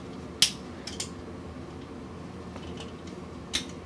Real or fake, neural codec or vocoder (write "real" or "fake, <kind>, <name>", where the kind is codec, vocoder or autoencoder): real